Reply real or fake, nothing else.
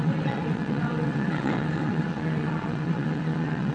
fake